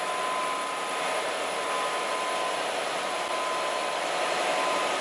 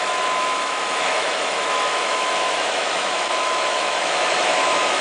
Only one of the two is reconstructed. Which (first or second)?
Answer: second